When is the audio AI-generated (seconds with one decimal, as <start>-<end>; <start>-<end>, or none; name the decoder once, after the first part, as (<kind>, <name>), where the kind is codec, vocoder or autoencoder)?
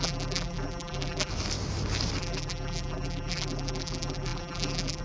0.0-1.3 (vocoder, BigVGAN v2); 2.2-5.0